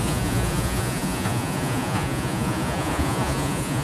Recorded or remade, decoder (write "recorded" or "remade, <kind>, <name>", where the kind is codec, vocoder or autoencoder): remade, vocoder, Vocos